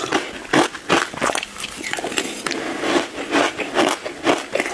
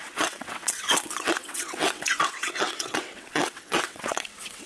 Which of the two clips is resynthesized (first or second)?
second